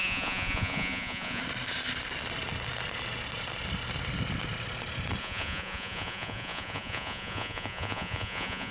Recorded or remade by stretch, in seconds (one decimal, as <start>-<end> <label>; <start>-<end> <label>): 0.0-1.4 remade; 1.4-5.2 recorded; 5.2-8.7 remade